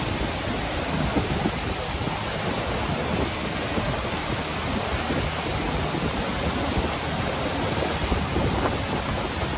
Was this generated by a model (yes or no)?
no